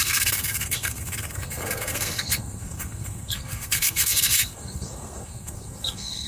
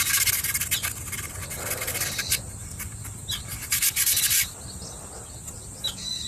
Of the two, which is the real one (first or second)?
second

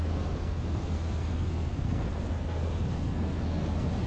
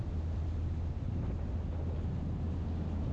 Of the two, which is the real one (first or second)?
second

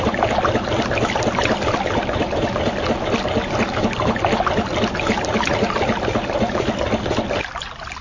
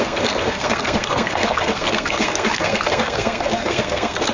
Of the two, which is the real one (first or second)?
first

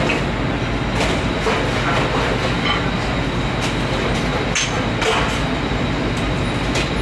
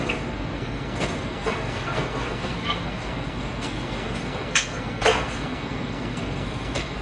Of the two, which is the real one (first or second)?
first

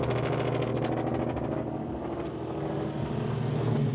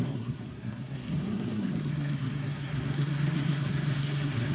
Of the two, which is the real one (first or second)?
first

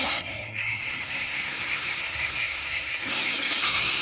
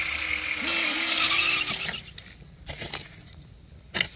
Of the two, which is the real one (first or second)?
second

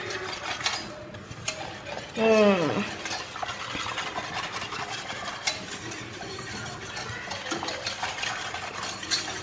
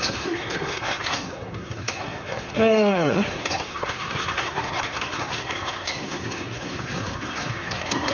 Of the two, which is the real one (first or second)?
first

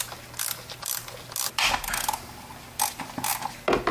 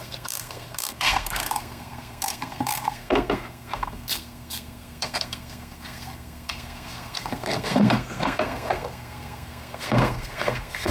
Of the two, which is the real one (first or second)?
first